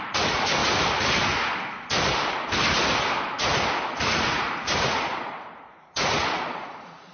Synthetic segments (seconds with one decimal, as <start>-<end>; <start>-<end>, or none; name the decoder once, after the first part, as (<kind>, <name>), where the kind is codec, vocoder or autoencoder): 0.0-0.6 (vocoder, Vocos); 4.0-7.1

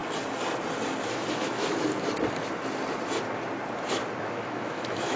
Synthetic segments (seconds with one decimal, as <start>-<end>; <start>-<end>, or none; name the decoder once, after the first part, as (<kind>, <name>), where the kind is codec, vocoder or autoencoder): 1.3-1.9 (autoencoder, DAC-VAE); 4.2-5.2

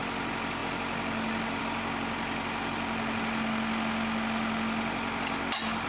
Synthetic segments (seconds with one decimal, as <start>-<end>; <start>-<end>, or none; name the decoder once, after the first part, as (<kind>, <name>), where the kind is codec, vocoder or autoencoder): none

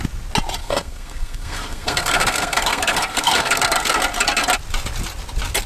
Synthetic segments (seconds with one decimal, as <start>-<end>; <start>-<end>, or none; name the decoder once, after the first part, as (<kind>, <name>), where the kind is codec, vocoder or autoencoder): 0.6-4.0 (codec, SNAC)